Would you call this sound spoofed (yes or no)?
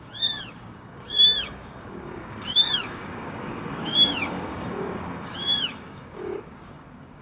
yes